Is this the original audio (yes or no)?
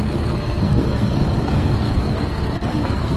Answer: no